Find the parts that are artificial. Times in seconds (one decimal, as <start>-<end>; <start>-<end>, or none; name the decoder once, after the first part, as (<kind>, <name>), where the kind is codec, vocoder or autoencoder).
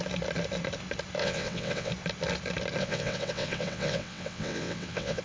1.2-1.9 (vocoder, WaveNeXt); 2.8-5.2